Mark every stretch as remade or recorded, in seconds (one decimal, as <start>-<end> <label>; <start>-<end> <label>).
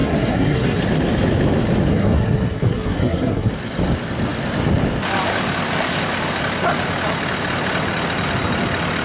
0.0-0.8 remade; 0.8-1.9 recorded; 1.9-3.5 remade; 3.5-9.0 recorded